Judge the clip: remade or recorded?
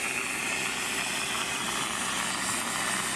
recorded